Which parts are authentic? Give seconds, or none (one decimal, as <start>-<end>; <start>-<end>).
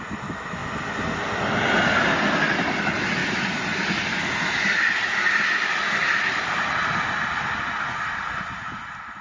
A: 0.0-9.2